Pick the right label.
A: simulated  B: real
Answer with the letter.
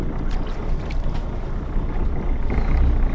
B